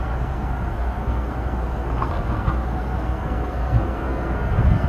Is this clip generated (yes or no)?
yes